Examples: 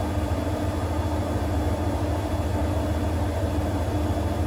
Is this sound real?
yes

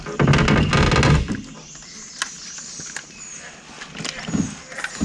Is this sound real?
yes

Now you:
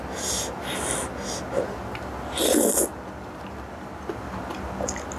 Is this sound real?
yes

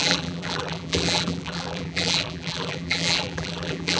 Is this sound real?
no